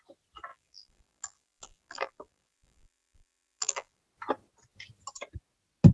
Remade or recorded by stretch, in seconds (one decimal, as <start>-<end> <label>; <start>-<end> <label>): 0.0-0.5 recorded; 0.5-4.0 remade; 4.0-5.9 recorded